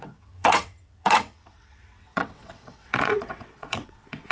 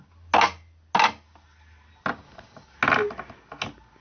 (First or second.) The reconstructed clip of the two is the first